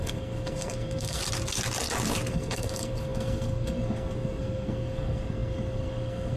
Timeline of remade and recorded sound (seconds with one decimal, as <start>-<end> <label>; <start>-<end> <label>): 0.0-1.2 remade; 1.2-2.3 recorded; 2.3-6.4 remade